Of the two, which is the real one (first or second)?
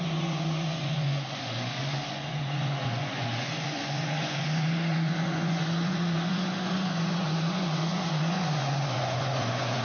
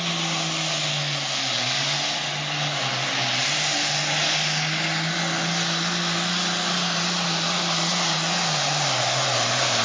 second